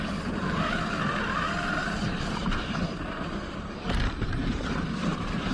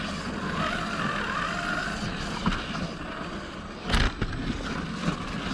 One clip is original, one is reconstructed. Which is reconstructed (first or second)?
first